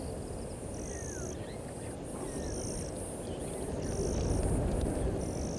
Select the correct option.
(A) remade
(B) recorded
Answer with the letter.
B